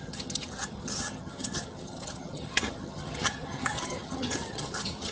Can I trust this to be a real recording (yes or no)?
no